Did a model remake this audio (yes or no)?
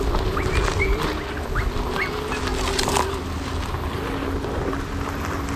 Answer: no